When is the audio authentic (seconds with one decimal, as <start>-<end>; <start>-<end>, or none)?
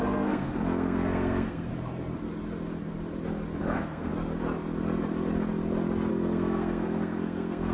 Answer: 1.7-3.6; 4.1-6.1